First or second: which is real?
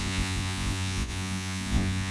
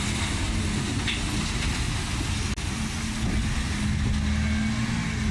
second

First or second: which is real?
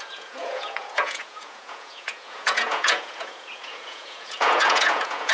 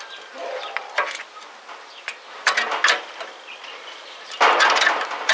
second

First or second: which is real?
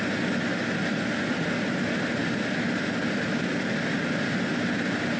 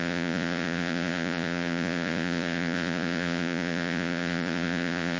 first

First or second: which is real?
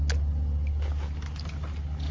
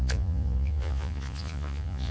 first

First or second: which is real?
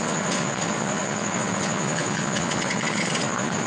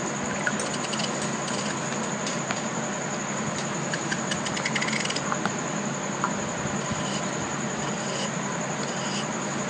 second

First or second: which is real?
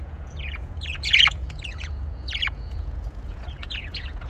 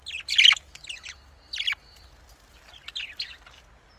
second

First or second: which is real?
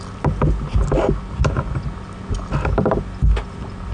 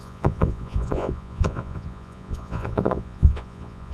first